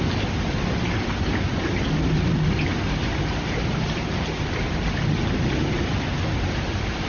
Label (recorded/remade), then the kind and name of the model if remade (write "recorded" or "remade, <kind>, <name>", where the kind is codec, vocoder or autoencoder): recorded